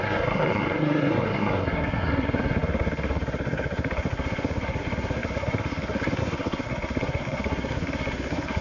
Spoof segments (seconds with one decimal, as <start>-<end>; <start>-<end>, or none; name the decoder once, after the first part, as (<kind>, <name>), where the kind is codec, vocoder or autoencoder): 0.0-8.6 (codec, SNAC)